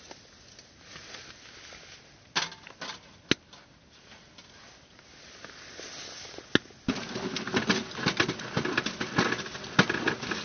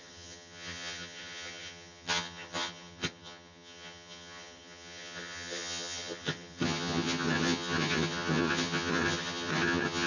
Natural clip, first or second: first